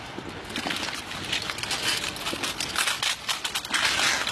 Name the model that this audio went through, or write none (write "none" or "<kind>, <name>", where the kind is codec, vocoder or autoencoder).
none